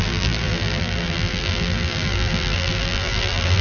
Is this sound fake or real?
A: fake